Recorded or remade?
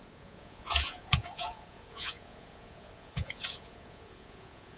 remade